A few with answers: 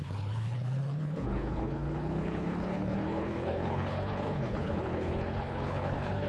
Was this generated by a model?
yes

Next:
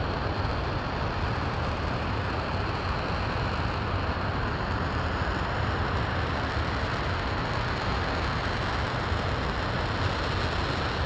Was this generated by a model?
no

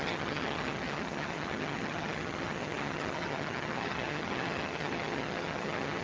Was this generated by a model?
yes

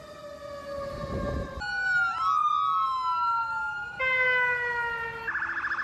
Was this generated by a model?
no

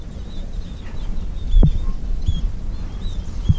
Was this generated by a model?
no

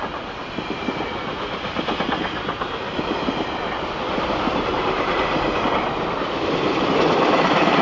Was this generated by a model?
no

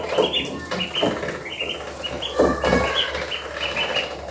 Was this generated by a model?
no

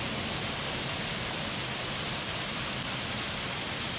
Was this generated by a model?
no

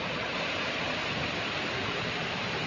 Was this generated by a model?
no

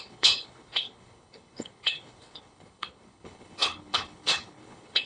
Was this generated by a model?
yes